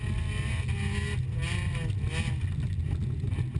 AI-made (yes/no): no